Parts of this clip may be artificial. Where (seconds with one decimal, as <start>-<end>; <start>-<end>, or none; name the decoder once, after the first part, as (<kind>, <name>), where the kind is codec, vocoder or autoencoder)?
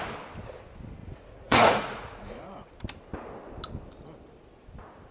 1.0-2.7 (vocoder, Vocos)